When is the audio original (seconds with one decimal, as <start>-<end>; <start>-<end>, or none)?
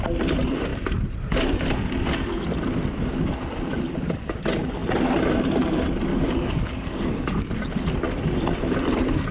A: 0.0-6.1; 7.5-9.3